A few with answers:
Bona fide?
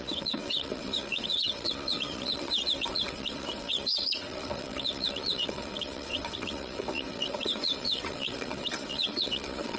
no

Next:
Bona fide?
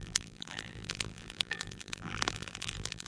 no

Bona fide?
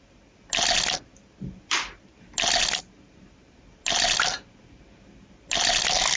yes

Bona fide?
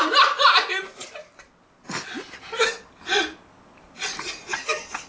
yes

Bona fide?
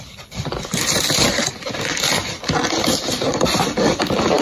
no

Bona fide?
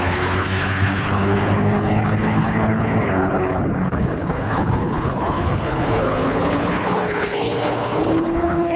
no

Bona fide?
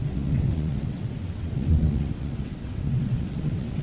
no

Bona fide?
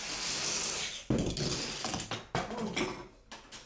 yes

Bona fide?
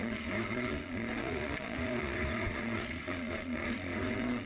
no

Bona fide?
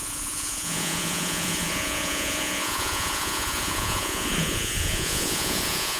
no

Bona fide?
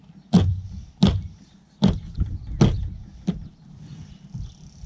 yes